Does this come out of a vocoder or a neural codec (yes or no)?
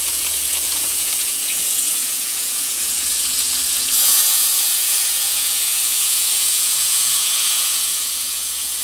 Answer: yes